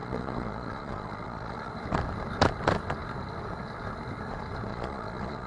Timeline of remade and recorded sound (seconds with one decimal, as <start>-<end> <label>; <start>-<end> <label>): 0.0-1.7 remade; 1.7-4.7 recorded; 4.7-5.5 remade